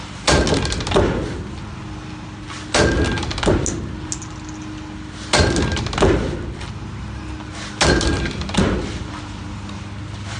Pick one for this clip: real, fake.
real